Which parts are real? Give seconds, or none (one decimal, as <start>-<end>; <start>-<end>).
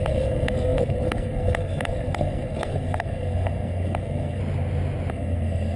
4.4-5.1